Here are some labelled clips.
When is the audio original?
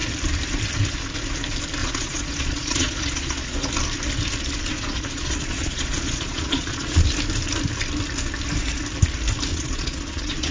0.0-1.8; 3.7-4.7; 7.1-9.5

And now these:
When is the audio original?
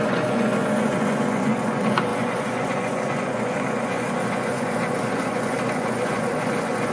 none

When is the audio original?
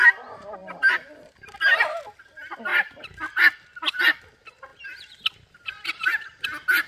0.0-6.9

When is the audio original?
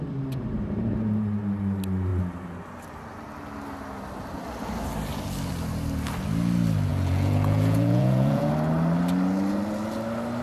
0.0-6.9; 8.5-10.4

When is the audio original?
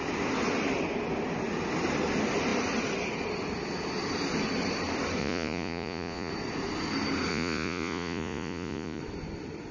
0.0-5.2; 6.3-7.3; 9.0-9.7